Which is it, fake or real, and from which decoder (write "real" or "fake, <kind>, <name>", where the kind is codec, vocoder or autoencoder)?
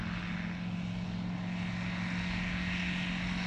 real